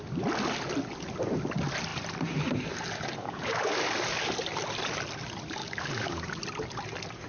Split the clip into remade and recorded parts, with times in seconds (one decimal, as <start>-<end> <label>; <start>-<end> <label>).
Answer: 0.0-3.2 recorded; 3.2-4.3 remade; 4.3-5.6 recorded; 5.6-6.4 remade; 6.4-7.3 recorded